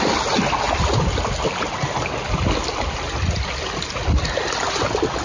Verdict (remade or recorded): recorded